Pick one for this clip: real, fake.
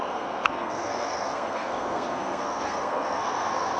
fake